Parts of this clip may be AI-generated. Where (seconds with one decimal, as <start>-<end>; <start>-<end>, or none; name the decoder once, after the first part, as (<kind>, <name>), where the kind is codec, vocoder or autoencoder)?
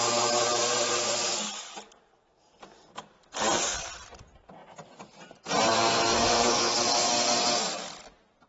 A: 0.5-3.3 (vocoder, BigVGAN v2); 4.6-6.5